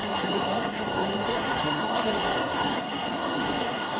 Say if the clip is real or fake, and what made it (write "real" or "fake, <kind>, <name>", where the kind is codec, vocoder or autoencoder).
fake, codec, SNAC